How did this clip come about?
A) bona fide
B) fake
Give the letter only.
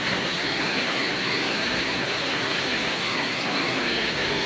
B